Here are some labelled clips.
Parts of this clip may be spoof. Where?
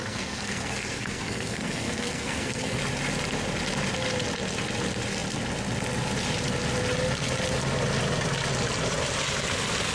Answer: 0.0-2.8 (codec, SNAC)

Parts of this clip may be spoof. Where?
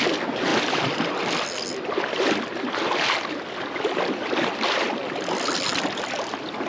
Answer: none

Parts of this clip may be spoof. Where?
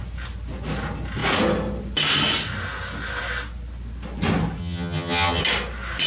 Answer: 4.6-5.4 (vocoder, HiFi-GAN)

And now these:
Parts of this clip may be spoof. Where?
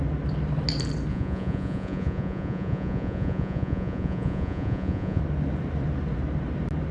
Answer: 1.1-5.2 (vocoder, Vocos)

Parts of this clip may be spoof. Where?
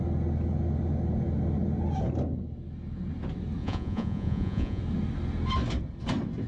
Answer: 3.6-4.8 (vocoder, Vocos)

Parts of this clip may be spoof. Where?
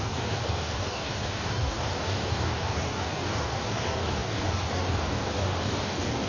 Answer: 0.0-6.3 (codec, DAC)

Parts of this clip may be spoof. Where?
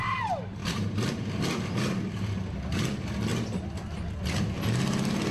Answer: 0.6-2.8 (vocoder, BigVGAN v2)